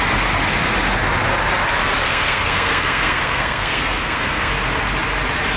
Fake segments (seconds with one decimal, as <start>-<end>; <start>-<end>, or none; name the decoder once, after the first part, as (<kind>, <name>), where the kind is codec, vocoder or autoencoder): 2.0-4.5 (codec, SNAC)